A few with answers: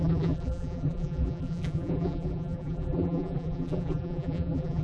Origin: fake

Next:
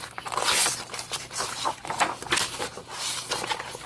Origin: real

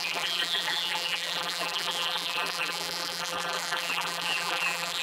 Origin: fake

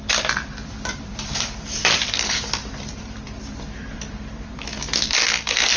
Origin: fake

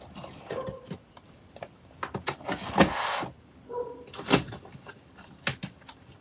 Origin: fake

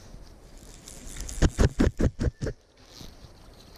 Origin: real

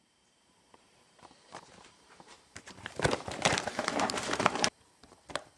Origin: fake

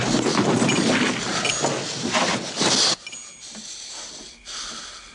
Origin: real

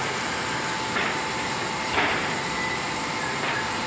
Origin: fake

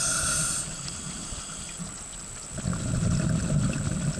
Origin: real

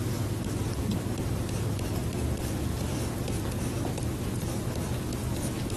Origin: real